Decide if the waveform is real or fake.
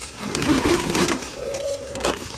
fake